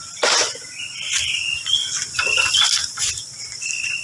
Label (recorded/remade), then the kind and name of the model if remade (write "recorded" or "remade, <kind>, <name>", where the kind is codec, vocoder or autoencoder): remade, vocoder, BigVGAN v2